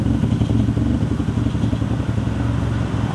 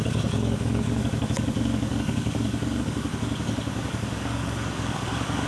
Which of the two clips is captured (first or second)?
first